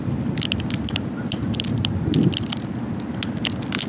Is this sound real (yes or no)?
yes